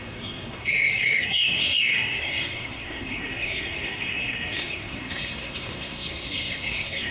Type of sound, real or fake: fake